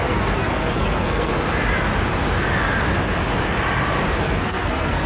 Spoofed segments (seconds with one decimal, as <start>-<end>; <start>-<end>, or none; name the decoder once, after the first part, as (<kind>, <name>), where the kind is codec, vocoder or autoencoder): 0.0-1.3 (codec, SNAC); 4.2-5.1